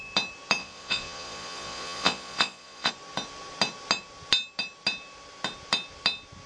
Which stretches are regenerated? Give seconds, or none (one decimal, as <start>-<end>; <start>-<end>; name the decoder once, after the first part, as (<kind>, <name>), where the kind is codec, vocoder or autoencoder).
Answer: 0.6-2.9 (vocoder, Vocos)